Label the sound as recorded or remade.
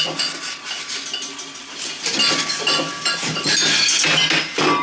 recorded